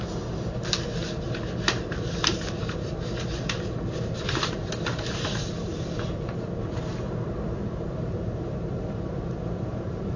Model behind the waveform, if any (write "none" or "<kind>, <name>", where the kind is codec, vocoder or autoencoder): vocoder, BigVGAN v2